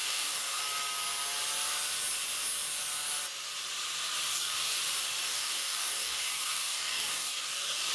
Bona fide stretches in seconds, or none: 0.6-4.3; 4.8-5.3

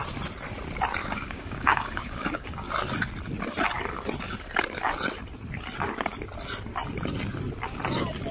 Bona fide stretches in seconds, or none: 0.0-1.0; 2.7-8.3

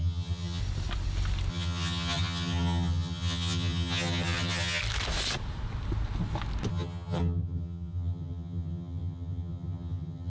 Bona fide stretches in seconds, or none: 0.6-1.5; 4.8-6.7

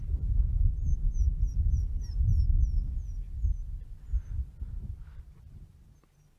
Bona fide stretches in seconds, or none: 0.9-4.7

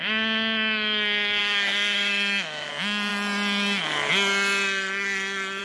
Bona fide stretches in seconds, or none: 0.0-1.4; 2.7-5.6